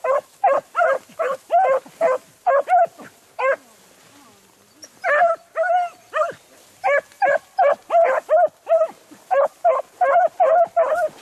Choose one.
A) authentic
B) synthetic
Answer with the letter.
A